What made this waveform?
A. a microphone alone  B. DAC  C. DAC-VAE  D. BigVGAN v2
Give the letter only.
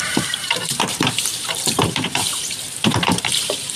D